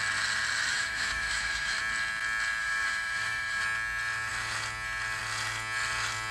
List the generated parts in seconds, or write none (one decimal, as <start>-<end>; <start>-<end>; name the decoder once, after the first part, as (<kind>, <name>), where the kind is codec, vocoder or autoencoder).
0.7-1.8 (autoencoder, DAC-VAE); 2.6-3.6